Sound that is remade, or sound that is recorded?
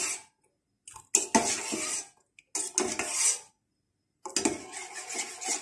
recorded